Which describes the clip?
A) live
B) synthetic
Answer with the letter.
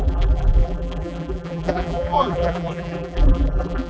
B